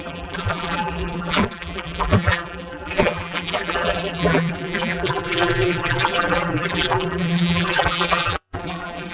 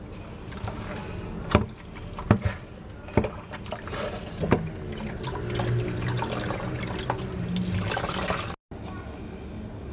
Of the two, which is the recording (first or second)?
second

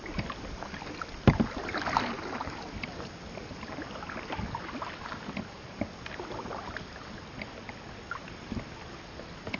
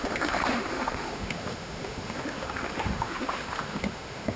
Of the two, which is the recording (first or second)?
first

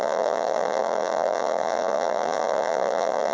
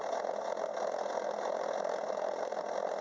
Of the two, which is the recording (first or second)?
second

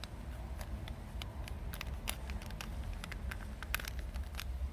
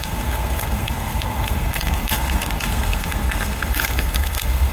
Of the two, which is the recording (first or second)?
first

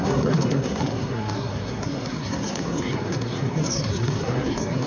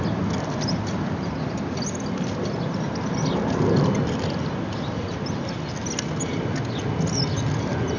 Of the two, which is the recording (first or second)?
second